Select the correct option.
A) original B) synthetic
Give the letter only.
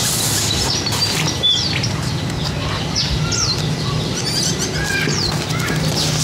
A